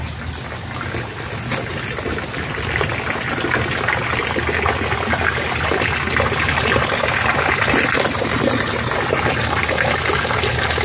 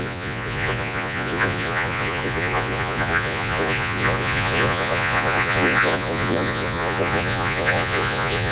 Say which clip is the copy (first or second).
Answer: second